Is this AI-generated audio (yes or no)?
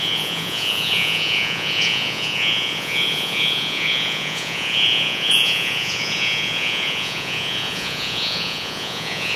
yes